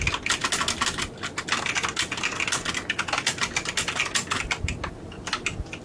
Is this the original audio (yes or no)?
yes